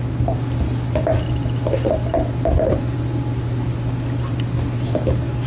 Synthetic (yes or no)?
no